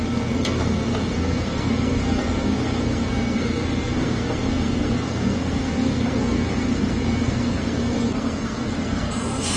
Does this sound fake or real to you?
fake